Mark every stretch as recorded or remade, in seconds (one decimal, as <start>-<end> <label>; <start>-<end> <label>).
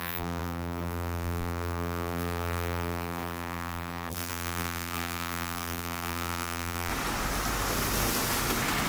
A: 0.0-6.9 remade; 6.9-8.9 recorded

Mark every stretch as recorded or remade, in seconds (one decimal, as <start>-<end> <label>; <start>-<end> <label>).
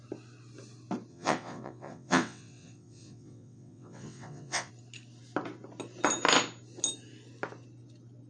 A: 0.0-1.1 recorded; 1.1-4.7 remade; 4.7-8.3 recorded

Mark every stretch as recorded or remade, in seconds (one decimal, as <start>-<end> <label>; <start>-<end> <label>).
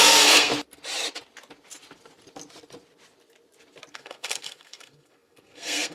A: 0.0-0.5 remade; 0.5-3.9 recorded; 3.9-5.9 remade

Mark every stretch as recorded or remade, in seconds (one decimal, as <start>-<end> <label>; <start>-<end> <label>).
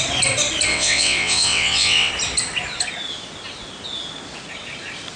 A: 0.0-0.7 recorded; 0.7-2.1 remade; 2.1-5.2 recorded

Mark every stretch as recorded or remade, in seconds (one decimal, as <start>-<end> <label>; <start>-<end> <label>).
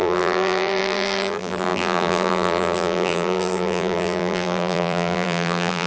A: 0.0-5.9 remade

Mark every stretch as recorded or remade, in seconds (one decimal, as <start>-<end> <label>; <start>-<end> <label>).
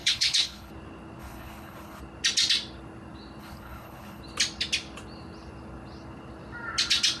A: 0.0-0.7 remade; 0.7-1.2 recorded; 1.2-2.0 remade; 2.0-3.4 recorded; 3.4-4.2 remade; 4.2-7.2 recorded